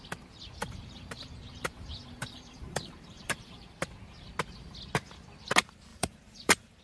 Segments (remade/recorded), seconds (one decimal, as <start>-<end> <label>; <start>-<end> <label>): 0.0-0.6 recorded; 0.6-3.7 remade; 3.7-5.9 recorded; 5.9-6.8 remade